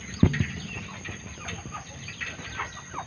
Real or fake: real